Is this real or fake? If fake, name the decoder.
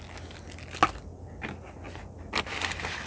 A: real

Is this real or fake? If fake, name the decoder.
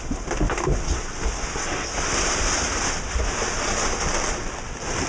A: real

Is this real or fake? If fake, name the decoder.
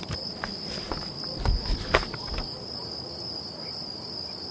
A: real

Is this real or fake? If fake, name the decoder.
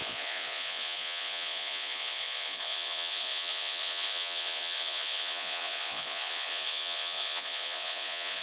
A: fake, vocoder, Vocos